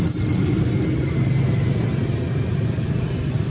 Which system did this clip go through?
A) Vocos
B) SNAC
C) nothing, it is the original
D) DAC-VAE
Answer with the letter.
C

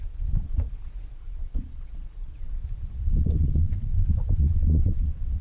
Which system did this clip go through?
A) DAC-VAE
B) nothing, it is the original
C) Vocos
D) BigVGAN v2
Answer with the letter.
C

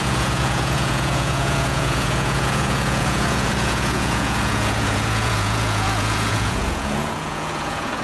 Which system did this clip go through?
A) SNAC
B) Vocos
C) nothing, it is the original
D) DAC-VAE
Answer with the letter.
B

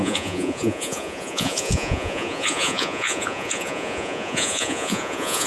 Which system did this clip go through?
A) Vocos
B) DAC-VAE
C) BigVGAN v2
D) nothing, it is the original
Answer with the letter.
A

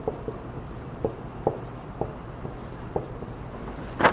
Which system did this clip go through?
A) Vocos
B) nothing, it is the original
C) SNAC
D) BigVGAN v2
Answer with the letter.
B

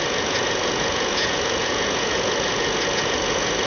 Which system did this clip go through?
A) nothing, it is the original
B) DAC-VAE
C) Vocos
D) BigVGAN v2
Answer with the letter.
C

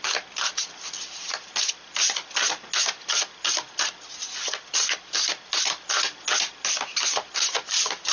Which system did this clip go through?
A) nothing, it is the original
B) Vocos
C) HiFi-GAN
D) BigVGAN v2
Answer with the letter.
A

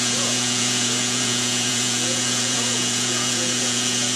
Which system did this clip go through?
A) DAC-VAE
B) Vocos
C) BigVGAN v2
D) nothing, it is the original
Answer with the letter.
B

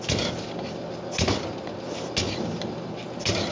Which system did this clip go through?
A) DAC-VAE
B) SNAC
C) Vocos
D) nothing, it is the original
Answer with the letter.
D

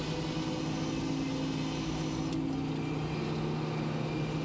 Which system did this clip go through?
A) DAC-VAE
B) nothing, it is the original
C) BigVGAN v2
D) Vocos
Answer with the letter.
B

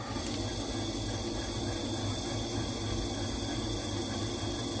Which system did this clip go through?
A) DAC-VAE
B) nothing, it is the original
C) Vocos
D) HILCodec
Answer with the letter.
B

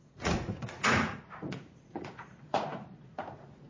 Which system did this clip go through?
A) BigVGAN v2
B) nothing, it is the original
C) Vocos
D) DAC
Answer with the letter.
C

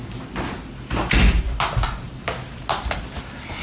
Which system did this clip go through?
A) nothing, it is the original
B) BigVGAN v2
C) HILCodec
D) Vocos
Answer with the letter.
A